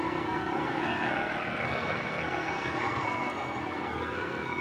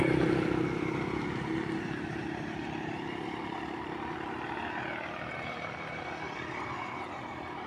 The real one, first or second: second